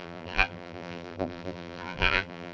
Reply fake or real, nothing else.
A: fake